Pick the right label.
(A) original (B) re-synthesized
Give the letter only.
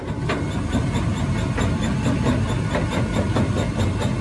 A